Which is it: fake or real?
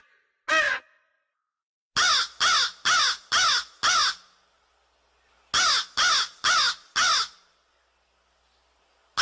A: real